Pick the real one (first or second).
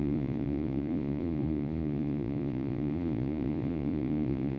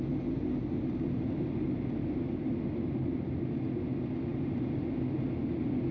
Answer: second